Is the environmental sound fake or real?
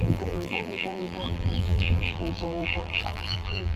fake